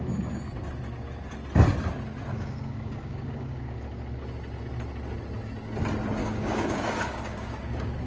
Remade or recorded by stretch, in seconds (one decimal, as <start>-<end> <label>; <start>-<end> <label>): 0.0-2.3 recorded; 2.3-3.8 remade; 3.8-6.2 recorded; 6.2-8.1 remade